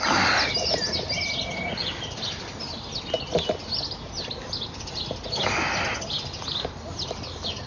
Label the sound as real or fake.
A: real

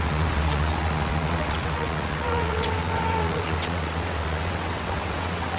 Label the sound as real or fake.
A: fake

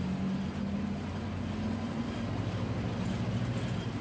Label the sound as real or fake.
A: real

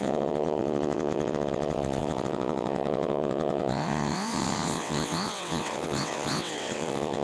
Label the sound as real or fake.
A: fake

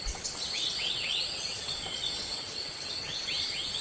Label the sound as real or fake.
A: fake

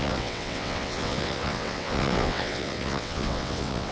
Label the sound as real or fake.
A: fake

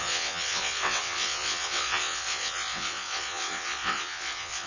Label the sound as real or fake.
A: fake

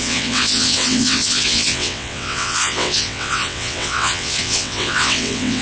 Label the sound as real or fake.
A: fake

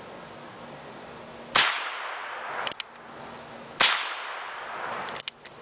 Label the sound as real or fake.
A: real